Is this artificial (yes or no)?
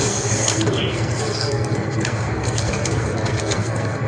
yes